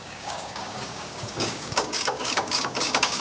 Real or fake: fake